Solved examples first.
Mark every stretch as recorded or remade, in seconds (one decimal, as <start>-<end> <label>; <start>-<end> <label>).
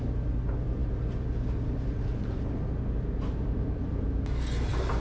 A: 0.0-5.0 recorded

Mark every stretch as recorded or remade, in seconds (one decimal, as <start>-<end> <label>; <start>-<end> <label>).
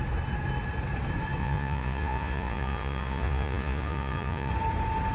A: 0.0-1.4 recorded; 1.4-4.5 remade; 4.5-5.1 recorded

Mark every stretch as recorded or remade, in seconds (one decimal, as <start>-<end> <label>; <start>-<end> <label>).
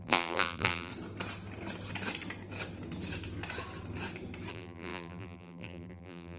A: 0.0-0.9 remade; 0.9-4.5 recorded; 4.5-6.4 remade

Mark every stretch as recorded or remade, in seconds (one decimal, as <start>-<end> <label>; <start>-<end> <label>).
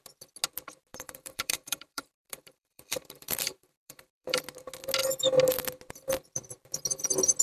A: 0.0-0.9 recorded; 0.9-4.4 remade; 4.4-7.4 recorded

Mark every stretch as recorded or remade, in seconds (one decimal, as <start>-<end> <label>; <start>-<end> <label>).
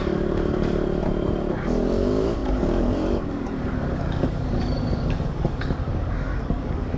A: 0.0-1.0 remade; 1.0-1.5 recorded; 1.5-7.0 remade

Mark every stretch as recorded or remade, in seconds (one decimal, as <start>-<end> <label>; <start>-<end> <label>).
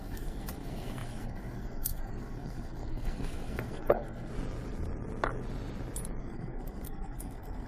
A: 0.0-4.3 remade; 4.3-6.2 recorded; 6.2-7.7 remade